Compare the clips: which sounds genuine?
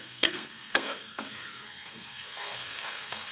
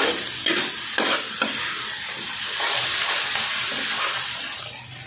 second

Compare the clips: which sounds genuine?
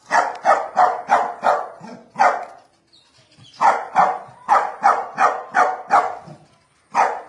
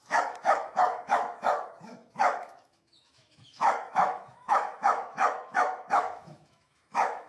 first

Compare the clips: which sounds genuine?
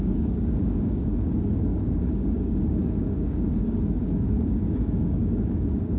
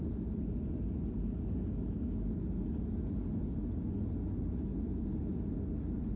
second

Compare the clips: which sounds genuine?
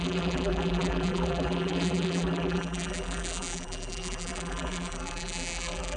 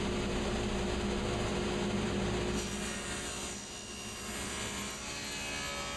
second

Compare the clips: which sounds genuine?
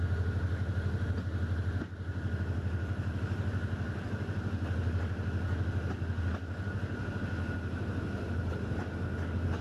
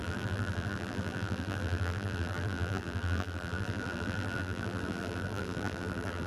first